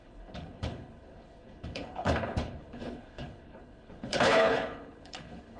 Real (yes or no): no